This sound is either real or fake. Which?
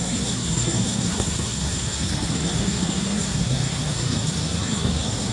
fake